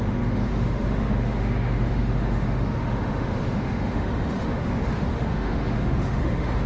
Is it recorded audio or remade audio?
remade